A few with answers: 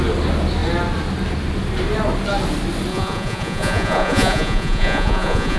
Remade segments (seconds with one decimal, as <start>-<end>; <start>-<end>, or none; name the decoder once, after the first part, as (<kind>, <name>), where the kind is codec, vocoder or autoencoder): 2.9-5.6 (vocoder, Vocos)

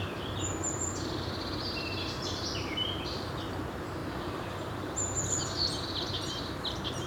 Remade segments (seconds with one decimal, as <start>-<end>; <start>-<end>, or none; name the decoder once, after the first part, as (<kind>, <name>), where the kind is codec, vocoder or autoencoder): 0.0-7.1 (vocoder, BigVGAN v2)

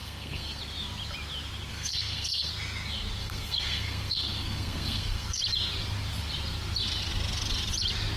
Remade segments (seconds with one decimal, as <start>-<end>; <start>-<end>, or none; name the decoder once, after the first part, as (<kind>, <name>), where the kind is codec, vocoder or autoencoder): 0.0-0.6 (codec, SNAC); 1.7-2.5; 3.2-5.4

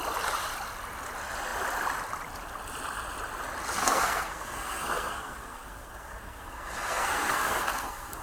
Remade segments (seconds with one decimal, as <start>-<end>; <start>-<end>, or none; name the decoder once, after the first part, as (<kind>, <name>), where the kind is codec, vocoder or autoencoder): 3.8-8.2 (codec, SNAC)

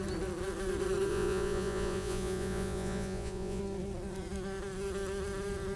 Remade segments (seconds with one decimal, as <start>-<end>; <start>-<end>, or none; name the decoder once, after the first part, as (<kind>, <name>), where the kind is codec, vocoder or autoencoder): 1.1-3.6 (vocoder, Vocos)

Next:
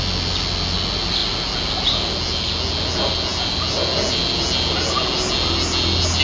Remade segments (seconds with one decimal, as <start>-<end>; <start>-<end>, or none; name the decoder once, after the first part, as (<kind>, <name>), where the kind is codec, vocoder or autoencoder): none

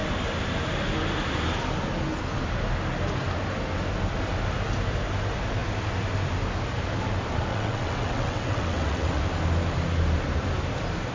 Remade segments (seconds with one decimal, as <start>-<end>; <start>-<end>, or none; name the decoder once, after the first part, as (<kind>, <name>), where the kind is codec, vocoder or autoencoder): 7.5-9.2 (vocoder, WaveNeXt)

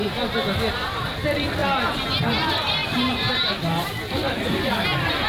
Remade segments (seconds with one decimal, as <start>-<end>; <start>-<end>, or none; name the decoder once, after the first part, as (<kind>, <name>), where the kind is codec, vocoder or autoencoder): 0.7-1.6 (vocoder, BigVGAN v2); 2.3-5.3